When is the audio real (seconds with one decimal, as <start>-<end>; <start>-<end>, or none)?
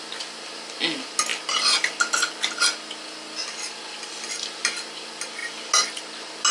0.0-6.5